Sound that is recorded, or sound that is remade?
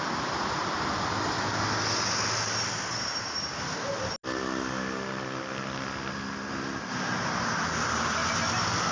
recorded